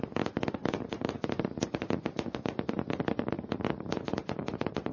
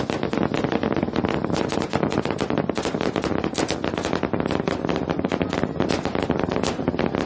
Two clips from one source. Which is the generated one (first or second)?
first